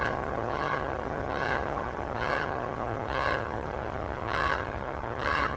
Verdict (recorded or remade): remade